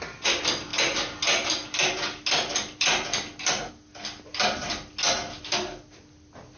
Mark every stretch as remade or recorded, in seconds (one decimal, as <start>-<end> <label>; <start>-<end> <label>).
0.0-6.6 recorded